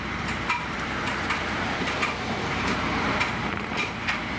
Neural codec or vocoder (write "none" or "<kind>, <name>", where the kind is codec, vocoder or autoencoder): vocoder, BigVGAN v2